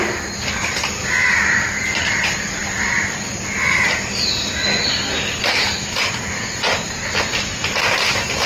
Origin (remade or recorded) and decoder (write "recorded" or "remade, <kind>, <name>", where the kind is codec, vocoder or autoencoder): recorded